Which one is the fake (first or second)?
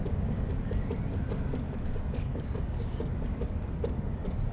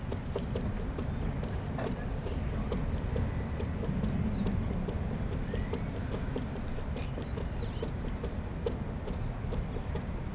first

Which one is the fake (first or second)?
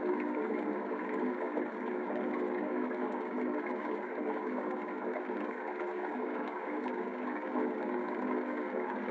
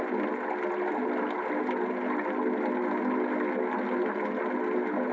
first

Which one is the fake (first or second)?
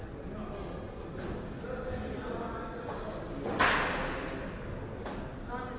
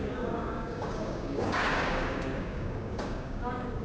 second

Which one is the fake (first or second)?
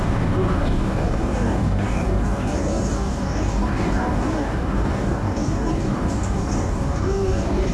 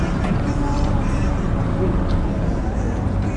first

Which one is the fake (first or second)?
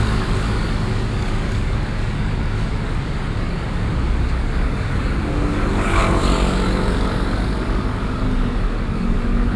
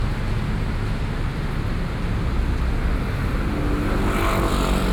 first